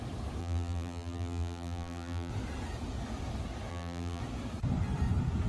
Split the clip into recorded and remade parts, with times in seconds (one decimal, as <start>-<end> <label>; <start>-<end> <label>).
0.0-0.4 recorded; 0.4-2.3 remade; 2.3-3.7 recorded; 3.7-4.2 remade; 4.2-5.5 recorded